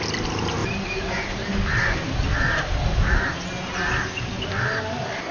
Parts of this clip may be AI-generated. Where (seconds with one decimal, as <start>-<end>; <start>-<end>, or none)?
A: 0.6-3.3